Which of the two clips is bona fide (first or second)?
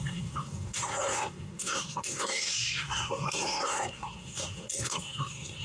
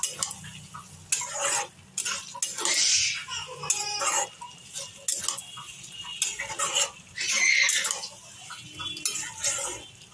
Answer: second